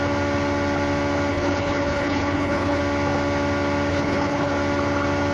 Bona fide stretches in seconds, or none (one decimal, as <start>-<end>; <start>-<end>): 0.0-1.3; 2.8-3.9; 4.5-5.3